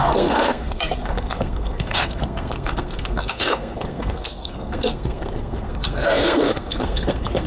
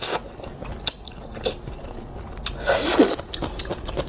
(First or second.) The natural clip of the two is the second